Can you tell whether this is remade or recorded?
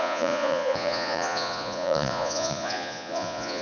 remade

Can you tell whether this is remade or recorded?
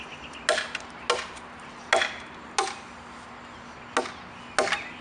recorded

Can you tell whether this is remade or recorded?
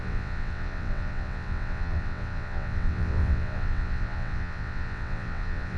remade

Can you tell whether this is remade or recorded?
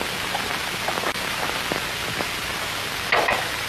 recorded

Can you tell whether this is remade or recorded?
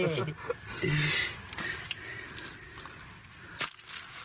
recorded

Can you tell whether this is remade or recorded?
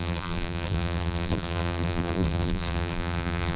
remade